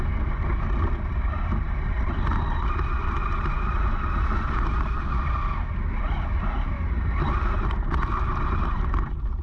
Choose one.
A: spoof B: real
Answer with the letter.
B